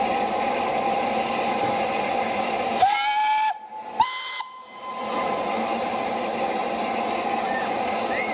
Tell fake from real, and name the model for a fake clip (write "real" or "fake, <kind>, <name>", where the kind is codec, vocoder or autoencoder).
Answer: real